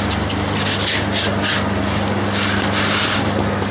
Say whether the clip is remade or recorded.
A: recorded